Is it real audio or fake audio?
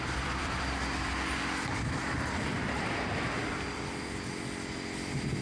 fake